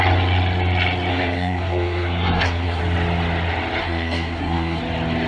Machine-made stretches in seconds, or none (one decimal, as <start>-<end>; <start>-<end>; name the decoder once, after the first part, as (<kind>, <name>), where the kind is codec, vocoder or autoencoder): 1.1-2.8 (codec, SNAC); 3.8-4.8